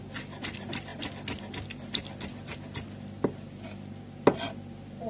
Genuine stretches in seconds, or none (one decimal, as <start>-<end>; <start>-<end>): 0.0-5.1